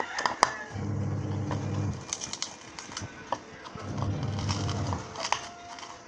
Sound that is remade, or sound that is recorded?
recorded